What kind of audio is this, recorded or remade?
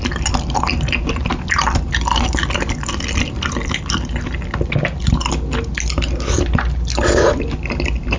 recorded